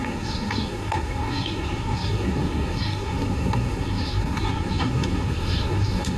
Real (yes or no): no